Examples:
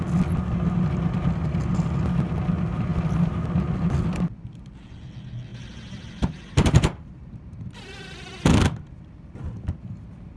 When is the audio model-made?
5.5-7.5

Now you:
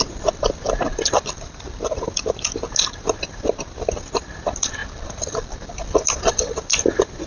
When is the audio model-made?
0.9-2.0; 4.8-6.1

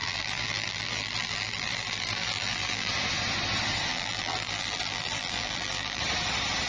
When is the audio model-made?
0.0-2.9; 3.9-6.0

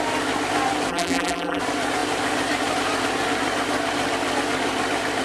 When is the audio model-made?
0.9-1.6

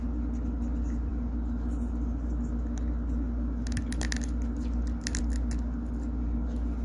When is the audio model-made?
none